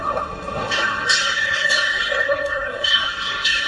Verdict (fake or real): fake